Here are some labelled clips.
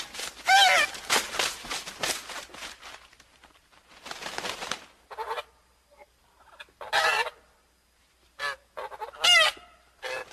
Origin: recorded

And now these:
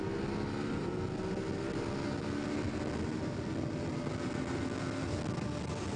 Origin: recorded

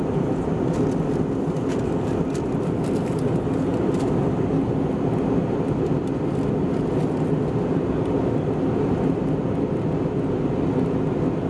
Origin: recorded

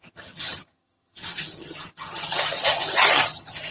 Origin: remade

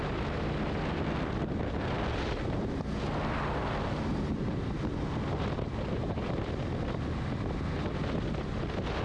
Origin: recorded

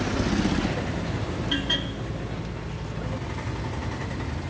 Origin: recorded